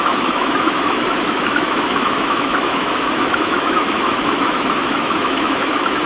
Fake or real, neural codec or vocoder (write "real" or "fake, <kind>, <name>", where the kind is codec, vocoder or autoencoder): fake, autoencoder, DAC-VAE